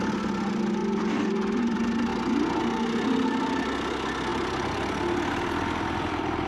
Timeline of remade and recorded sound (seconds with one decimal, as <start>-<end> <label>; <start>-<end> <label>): 0.0-2.1 remade; 2.1-2.6 recorded; 2.6-6.5 remade